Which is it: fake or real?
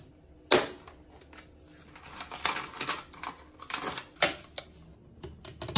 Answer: real